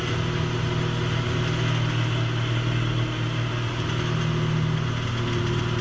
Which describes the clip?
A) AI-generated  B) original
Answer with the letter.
B